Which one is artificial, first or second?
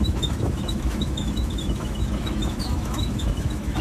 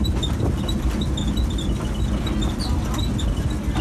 first